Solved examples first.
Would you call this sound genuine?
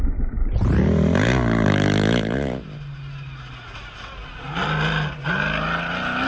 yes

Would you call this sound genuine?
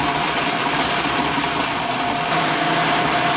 yes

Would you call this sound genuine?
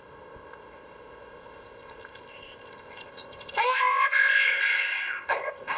no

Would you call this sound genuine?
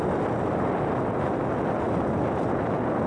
yes